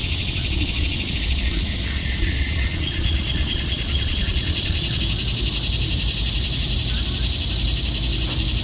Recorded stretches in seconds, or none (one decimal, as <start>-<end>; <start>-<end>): 5.0-8.6